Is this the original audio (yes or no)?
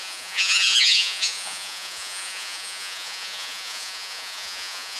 no